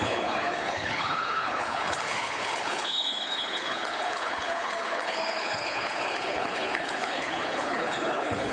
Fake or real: fake